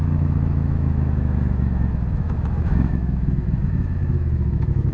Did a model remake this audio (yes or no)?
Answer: yes